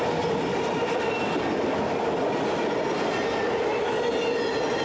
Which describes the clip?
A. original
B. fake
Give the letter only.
A